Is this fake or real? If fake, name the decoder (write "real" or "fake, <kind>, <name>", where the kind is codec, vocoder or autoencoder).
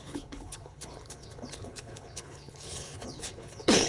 fake, codec, HILCodec